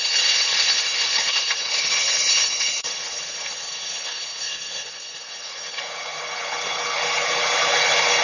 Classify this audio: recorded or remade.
remade